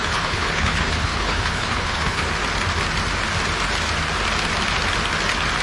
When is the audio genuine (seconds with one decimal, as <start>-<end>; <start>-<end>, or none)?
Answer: 2.3-5.6